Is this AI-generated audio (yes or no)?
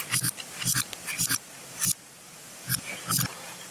yes